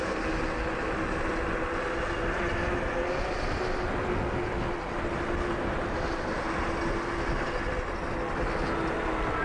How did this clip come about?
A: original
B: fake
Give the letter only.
A